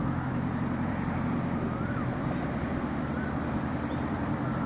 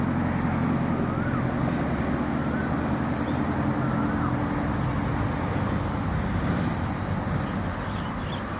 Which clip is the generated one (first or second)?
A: first